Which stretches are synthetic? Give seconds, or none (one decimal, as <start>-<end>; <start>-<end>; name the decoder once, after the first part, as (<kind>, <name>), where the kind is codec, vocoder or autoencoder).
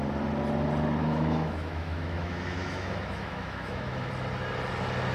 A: 1.0-4.1 (autoencoder, DAC-VAE)